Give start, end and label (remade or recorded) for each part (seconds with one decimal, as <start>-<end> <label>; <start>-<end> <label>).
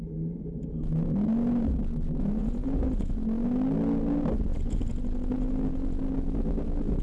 0.0-2.4 recorded; 2.4-3.1 remade; 3.1-4.5 recorded; 4.5-5.0 remade; 5.0-7.0 recorded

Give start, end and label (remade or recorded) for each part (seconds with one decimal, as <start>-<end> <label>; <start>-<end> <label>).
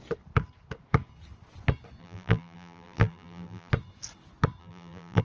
0.0-2.0 recorded; 2.0-3.7 remade; 3.7-4.6 recorded; 4.6-5.2 remade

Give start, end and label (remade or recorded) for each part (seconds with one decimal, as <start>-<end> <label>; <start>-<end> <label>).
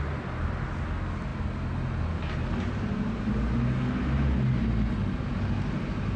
0.0-6.2 recorded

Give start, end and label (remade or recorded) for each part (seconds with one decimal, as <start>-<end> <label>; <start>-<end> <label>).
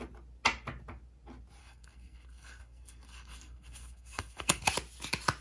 0.0-1.6 recorded; 1.6-4.6 remade; 4.6-5.4 recorded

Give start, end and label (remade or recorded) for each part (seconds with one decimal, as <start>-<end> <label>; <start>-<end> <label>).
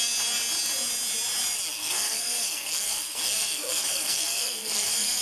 0.0-1.8 recorded; 1.8-5.2 remade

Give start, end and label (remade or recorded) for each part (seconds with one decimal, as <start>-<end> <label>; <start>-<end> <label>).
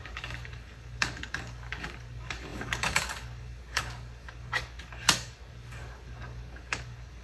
0.0-7.2 remade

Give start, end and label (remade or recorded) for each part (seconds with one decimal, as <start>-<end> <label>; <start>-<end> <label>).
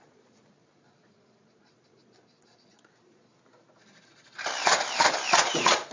0.0-3.3 remade; 3.3-5.4 recorded; 5.4-5.9 remade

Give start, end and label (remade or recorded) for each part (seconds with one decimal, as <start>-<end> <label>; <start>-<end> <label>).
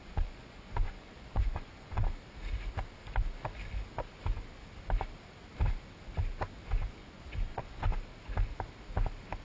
0.0-2.0 remade; 2.0-7.0 recorded; 7.0-7.8 remade; 7.8-9.4 recorded